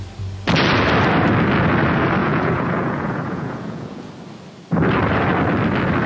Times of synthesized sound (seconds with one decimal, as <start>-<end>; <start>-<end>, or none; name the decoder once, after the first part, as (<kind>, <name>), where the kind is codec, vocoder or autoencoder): 2.2-4.1 (vocoder, Vocos)